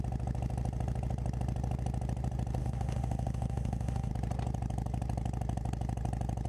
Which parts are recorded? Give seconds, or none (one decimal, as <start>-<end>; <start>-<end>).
0.0-2.6; 4.1-6.5